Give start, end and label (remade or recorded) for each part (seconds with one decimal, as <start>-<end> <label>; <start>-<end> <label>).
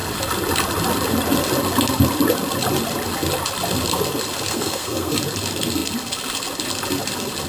0.0-4.5 recorded; 4.5-5.1 remade; 5.1-7.5 recorded